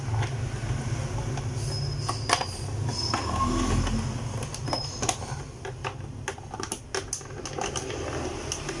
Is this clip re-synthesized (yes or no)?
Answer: no